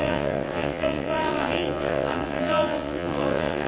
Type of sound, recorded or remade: remade